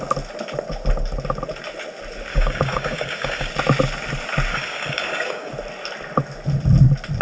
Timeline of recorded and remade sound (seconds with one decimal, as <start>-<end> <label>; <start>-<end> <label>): 0.0-2.3 recorded; 2.3-3.5 remade; 3.5-4.5 recorded; 4.5-5.5 remade; 5.5-7.2 recorded